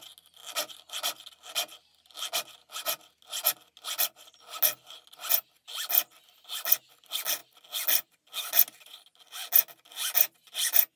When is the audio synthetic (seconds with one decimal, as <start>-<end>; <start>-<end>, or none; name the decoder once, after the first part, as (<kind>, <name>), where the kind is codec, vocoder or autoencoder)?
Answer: none